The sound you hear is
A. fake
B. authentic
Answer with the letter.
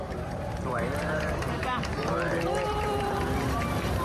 A